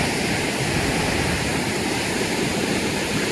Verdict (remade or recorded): recorded